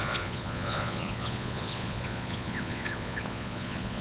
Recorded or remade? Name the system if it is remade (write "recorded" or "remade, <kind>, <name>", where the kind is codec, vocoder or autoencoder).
remade, vocoder, Vocos